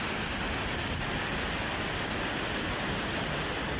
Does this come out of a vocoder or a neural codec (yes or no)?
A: no